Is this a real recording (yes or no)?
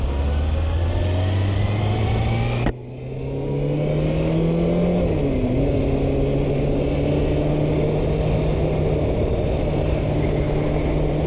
yes